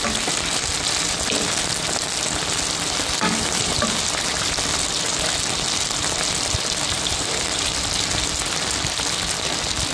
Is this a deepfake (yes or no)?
no